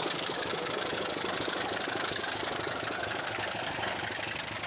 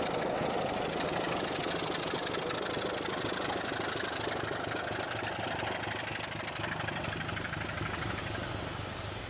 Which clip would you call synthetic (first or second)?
first